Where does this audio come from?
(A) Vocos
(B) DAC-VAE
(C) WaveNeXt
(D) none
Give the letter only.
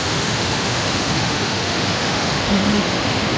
B